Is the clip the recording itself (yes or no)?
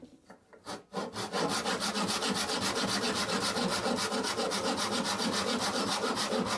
yes